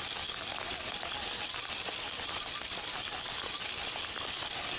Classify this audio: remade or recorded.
recorded